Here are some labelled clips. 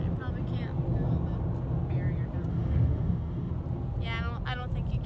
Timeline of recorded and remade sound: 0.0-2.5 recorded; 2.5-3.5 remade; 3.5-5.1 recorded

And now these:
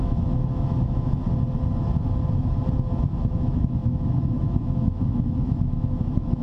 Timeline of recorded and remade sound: 0.0-1.2 remade; 1.2-2.9 recorded; 2.9-6.4 remade

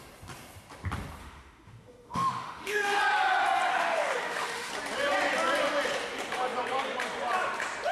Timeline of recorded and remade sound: 0.0-1.2 recorded; 1.2-3.0 remade; 3.0-3.7 recorded; 3.7-4.7 remade; 4.7-7.9 recorded

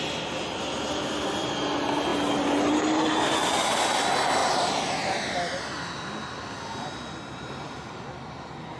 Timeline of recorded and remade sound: 0.0-8.8 recorded

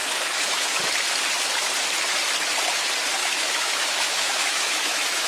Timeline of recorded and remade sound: 0.0-0.8 remade; 0.8-3.2 recorded; 3.2-5.3 remade

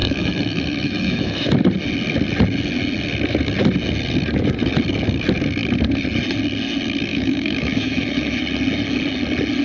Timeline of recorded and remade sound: 0.0-1.5 remade; 1.5-7.1 recorded; 7.1-8.4 remade; 8.4-9.6 recorded